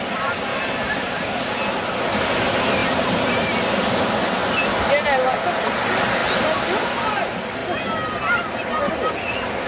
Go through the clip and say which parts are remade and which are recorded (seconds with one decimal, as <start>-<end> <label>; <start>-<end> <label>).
0.0-0.5 recorded; 0.5-1.2 remade; 1.2-2.8 recorded; 2.8-3.6 remade; 3.6-9.7 recorded